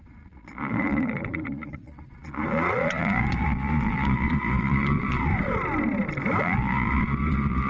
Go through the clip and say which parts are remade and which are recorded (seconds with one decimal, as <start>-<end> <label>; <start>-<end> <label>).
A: 0.0-5.3 remade; 5.3-6.4 recorded; 6.4-7.7 remade